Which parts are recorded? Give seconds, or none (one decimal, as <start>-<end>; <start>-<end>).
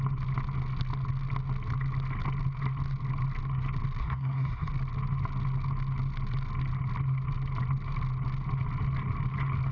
0.0-4.0; 4.7-9.7